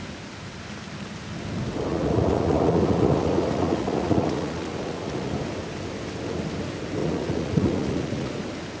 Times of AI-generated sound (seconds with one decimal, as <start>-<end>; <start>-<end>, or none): 1.9-5.3; 7.0-8.3